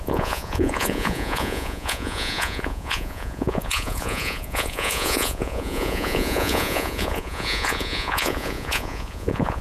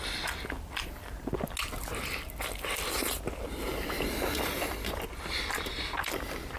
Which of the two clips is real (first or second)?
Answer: second